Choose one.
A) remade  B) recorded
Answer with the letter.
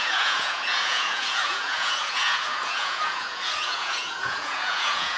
A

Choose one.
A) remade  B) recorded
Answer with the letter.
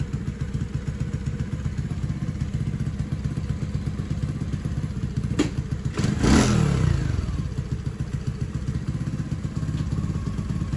B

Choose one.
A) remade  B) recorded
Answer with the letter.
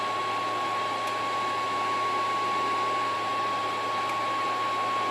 B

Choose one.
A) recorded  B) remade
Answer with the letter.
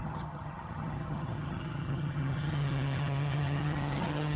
B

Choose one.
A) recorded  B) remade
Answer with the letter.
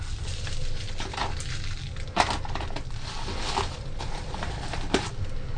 A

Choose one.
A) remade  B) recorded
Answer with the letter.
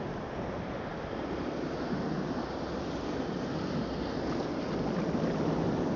B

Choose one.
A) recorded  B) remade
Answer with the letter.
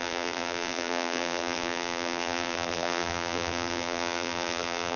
B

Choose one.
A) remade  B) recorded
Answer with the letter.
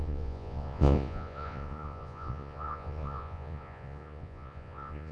A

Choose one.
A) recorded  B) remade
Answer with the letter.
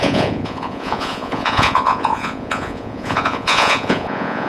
B